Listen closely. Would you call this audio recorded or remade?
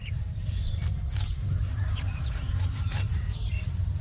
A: remade